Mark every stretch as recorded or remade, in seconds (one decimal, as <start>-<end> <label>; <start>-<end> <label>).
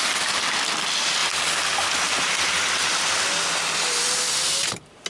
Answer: 0.0-5.1 recorded